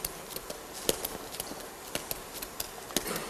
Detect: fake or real real